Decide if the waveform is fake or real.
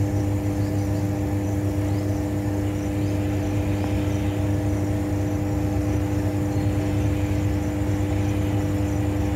real